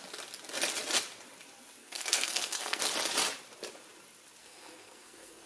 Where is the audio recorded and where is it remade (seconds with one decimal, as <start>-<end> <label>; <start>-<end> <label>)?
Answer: 0.0-1.8 recorded; 1.8-2.8 remade; 2.8-4.4 recorded; 4.4-5.5 remade